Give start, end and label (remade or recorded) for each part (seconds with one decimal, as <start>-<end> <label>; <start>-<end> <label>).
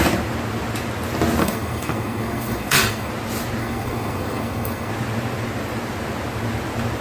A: 0.0-1.4 recorded; 1.4-3.1 remade; 3.1-3.6 recorded; 3.6-4.9 remade; 4.9-7.0 recorded